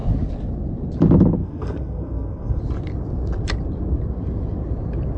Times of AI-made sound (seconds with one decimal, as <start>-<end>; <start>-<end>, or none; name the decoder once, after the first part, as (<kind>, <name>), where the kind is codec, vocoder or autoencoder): 1.4-2.6 (codec, SNAC)